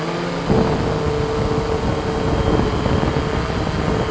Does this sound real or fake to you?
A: real